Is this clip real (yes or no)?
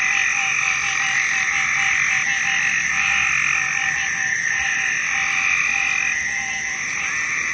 yes